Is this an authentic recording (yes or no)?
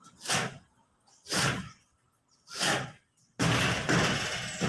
yes